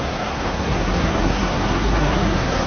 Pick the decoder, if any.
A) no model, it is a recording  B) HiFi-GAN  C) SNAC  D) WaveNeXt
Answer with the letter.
C